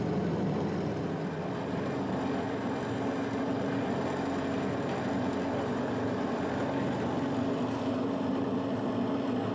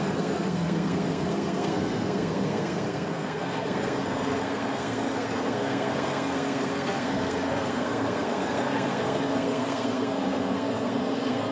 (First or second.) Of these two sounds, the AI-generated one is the second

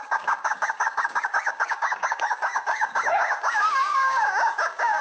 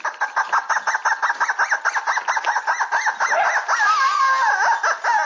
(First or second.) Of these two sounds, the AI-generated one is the first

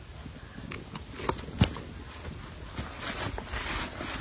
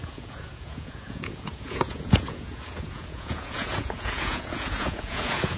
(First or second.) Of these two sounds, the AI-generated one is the second